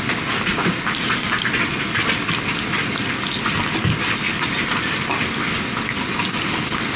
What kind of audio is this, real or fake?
real